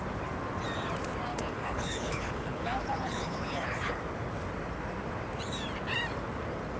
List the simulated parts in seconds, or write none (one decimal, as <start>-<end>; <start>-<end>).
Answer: 1.3-4.0